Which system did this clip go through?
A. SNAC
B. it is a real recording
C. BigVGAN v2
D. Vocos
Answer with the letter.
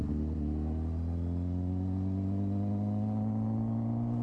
B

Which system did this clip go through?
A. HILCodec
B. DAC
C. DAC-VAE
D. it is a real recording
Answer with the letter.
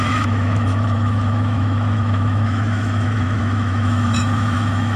C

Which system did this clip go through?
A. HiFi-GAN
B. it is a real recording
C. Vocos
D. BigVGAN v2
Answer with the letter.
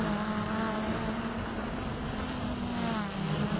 B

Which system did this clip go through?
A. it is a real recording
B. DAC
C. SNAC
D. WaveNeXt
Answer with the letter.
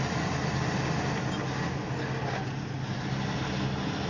A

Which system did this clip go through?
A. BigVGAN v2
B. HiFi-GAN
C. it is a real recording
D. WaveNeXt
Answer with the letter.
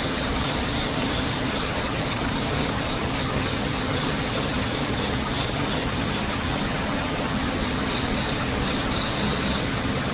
B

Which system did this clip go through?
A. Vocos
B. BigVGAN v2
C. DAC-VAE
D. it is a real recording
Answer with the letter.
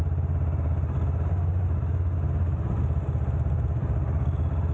D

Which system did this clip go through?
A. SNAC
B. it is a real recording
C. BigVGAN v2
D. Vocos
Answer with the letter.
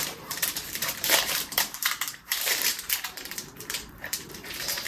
C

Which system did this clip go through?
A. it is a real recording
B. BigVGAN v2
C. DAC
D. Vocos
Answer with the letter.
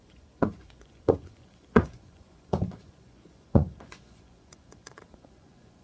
D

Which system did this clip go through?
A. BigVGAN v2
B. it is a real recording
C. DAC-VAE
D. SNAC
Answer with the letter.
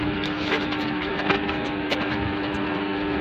D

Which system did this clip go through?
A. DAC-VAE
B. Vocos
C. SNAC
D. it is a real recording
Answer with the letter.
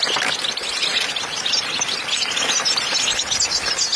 D